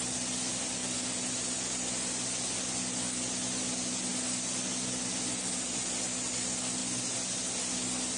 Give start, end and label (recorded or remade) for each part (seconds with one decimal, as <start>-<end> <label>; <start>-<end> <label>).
0.0-8.2 recorded